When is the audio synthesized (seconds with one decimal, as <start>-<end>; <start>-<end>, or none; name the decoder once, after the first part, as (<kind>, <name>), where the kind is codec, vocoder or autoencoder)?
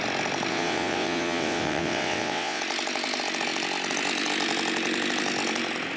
0.5-2.6 (vocoder, WaveNeXt)